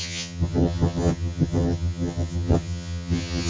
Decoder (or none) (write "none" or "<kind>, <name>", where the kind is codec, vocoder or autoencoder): vocoder, HiFi-GAN